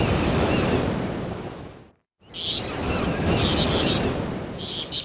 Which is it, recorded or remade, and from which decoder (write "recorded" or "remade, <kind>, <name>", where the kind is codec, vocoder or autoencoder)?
recorded